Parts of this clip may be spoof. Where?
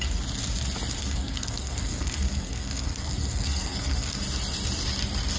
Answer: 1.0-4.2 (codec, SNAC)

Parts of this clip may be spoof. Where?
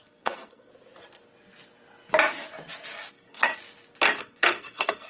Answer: 0.0-0.7 (codec, SNAC); 3.1-3.5; 4.2-5.1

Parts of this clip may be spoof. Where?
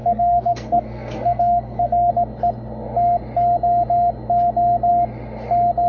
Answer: 0.0-2.1 (codec, SNAC)